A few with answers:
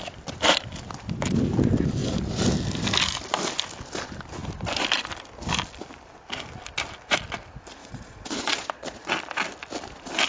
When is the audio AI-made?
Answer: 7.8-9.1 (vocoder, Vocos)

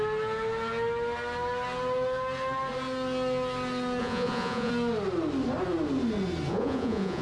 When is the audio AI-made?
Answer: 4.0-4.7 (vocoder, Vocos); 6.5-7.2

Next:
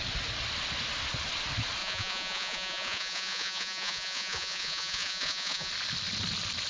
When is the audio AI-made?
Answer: 1.8-5.7 (vocoder, Vocos)